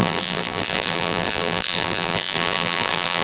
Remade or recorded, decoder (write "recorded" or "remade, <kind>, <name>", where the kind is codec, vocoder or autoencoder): remade, vocoder, BigVGAN v2